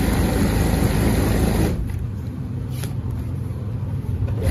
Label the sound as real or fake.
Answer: fake